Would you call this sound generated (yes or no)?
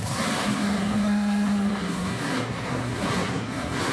yes